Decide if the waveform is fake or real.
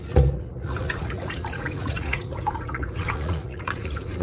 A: fake